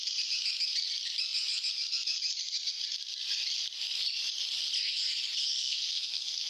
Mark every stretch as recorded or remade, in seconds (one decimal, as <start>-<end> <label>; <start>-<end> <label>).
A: 0.0-5.6 recorded; 5.6-6.5 remade